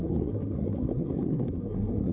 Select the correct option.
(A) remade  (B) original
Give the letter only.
A